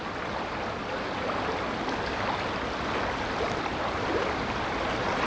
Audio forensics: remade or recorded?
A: recorded